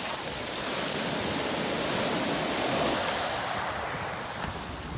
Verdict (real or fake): real